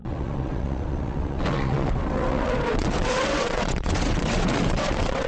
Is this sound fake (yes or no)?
yes